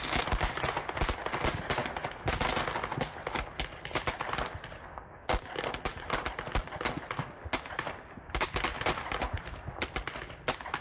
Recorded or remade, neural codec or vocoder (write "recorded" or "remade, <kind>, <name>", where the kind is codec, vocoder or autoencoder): recorded